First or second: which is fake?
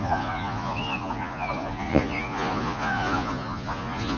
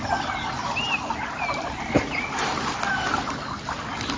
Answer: first